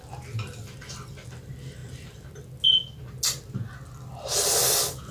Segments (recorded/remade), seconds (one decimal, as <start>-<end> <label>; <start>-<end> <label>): 0.0-5.1 recorded